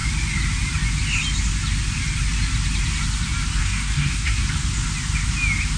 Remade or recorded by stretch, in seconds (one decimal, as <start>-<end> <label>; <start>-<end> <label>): 0.0-3.6 recorded; 3.6-4.4 remade; 4.4-5.8 recorded